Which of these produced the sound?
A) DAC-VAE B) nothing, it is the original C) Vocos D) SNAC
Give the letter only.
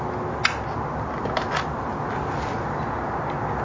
B